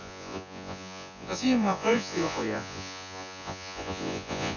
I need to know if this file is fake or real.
fake